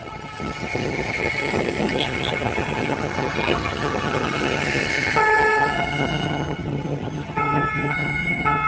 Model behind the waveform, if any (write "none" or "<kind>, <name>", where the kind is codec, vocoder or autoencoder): vocoder, HiFi-GAN